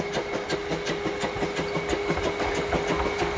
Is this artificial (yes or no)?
no